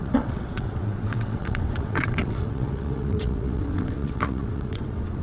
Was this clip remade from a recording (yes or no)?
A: yes